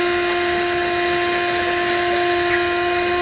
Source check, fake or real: real